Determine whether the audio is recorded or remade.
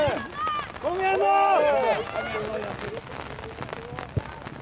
recorded